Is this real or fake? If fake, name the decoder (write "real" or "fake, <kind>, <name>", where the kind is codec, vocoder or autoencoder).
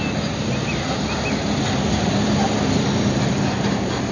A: real